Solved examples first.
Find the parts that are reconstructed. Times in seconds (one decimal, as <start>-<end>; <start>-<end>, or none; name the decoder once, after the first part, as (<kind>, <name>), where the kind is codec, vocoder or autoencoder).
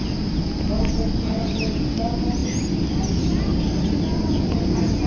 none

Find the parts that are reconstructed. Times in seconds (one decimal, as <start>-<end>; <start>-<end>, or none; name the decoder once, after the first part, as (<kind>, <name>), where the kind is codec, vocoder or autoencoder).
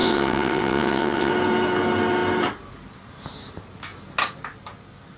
0.0-1.3 (vocoder, WaveNeXt)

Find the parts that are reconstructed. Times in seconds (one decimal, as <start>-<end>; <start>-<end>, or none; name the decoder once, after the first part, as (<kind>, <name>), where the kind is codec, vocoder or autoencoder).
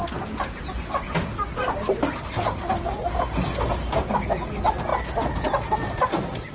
none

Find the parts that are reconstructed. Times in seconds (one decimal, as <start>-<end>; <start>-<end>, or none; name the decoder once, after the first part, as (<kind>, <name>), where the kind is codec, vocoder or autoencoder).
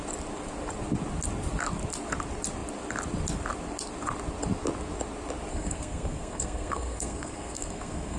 5.5-8.2 (codec, SNAC)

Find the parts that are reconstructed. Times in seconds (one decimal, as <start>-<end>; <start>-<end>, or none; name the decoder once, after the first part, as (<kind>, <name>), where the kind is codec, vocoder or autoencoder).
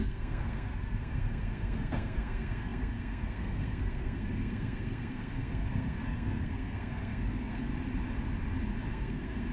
0.0-7.7 (codec, SNAC); 8.9-9.5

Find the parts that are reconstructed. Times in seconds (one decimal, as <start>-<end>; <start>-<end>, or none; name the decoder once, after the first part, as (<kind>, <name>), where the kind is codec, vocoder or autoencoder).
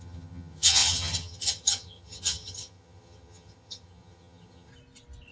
0.0-4.7 (vocoder, HiFi-GAN)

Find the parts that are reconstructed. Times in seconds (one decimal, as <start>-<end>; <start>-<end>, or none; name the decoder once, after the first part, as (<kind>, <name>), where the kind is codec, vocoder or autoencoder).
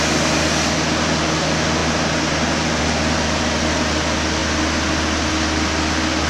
none